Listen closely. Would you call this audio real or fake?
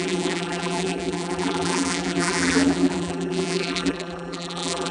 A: fake